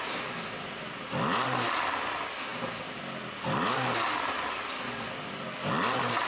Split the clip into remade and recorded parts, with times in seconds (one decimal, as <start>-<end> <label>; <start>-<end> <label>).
0.0-6.3 recorded